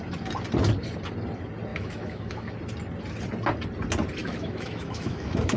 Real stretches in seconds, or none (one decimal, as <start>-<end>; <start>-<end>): 0.0-1.7; 2.5-4.2